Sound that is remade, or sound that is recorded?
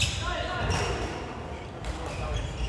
recorded